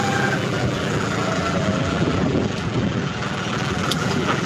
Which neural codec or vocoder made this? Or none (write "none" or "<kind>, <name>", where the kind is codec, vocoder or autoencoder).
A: vocoder, BigVGAN v2